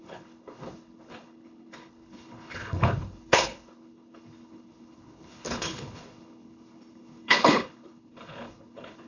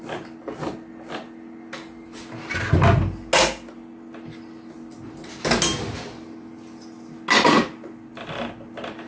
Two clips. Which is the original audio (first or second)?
second